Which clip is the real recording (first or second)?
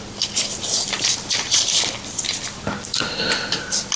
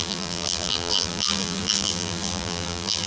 first